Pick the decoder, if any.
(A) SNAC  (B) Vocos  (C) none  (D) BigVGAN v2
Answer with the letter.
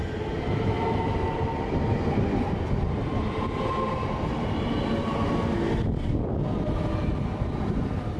C